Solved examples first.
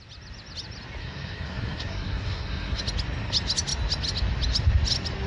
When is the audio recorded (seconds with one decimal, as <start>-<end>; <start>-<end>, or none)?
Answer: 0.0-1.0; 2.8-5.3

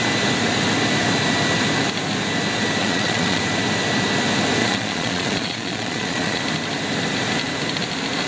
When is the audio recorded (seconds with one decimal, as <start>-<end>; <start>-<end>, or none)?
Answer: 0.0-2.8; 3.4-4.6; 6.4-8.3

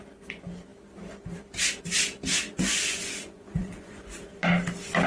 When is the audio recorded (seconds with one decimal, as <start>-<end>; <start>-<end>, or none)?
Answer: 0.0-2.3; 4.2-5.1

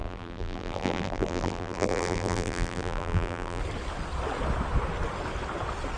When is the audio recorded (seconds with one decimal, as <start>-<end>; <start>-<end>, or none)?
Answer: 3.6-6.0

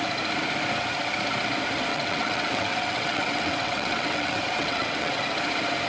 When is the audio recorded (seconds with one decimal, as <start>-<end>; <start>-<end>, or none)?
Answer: 0.0-1.9; 5.2-5.9

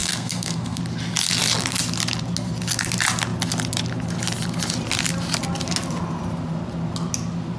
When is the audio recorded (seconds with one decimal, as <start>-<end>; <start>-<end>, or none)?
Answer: 0.8-7.6

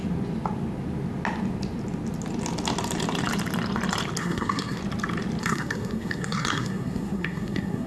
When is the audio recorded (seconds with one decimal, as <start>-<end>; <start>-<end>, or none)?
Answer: 0.0-4.2; 4.8-5.4